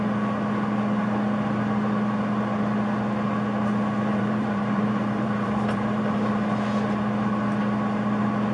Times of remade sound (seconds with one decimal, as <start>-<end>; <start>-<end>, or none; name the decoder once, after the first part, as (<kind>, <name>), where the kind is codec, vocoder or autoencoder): 4.1-6.3 (vocoder, BigVGAN v2)